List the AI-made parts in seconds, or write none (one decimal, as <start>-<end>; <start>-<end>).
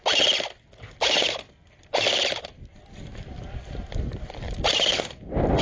none